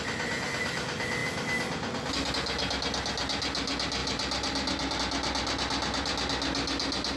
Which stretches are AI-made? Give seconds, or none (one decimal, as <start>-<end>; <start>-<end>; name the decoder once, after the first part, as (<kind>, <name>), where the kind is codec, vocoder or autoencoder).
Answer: 4.0-5.0 (vocoder, BigVGAN v2)